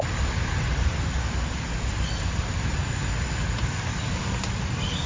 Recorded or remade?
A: recorded